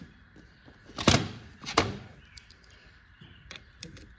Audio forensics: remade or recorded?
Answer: remade